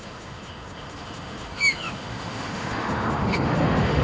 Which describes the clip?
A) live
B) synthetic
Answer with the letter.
B